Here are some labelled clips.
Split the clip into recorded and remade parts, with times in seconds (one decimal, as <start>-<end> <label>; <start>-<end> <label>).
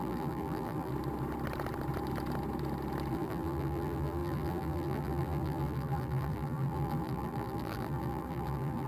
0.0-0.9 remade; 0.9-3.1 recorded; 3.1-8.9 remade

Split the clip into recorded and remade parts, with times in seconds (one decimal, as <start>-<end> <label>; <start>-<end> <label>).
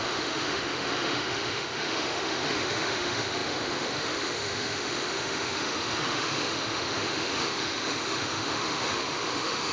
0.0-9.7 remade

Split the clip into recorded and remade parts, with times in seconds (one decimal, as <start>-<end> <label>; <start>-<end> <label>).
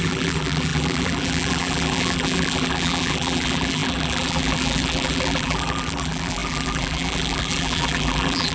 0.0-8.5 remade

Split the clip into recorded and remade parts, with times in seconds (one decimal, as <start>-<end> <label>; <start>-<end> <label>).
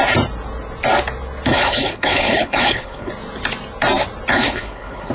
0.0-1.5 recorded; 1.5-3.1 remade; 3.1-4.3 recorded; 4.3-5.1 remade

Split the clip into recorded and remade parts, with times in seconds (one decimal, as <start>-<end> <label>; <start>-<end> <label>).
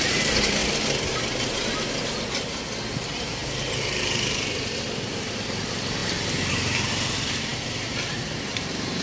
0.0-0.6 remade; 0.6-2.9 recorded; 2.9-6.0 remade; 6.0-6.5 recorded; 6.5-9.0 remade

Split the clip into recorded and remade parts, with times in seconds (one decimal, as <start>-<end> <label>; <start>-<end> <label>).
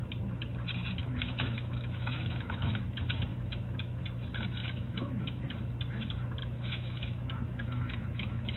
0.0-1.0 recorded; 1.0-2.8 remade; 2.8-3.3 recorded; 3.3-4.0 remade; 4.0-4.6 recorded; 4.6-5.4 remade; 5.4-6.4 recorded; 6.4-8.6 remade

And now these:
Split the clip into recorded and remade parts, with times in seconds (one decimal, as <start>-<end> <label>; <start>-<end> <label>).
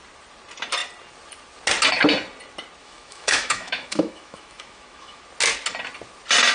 0.0-2.8 recorded; 2.8-5.2 remade; 5.2-6.5 recorded